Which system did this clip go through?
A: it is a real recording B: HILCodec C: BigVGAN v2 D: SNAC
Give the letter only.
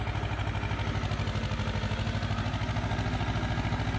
A